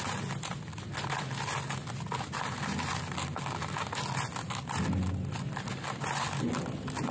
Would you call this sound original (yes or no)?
yes